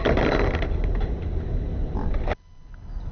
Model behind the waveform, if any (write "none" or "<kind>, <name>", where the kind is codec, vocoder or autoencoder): none